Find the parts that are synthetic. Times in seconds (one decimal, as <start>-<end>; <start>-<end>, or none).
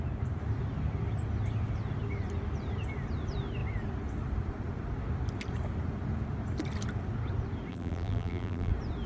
7.7-8.7